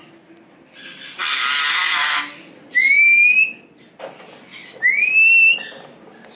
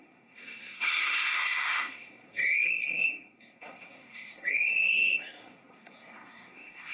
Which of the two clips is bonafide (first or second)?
first